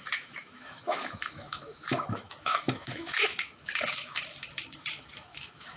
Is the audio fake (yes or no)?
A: yes